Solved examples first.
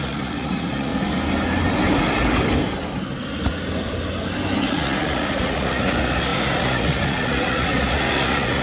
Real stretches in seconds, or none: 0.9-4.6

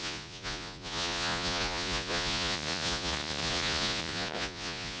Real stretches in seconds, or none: none

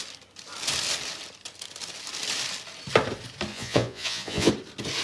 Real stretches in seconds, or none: 0.0-3.5; 4.5-5.0

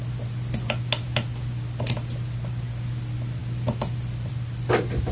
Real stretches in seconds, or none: 0.0-5.1